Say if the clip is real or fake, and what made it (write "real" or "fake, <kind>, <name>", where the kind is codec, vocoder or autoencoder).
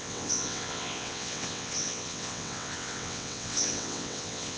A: fake, vocoder, WaveNeXt